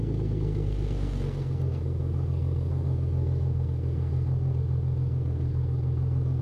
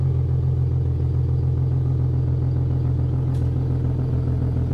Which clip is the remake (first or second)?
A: first